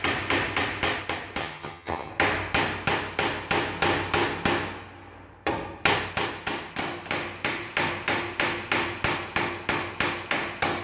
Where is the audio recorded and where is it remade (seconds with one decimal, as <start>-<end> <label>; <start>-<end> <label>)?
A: 0.0-1.4 recorded; 1.4-2.1 remade; 2.1-10.8 recorded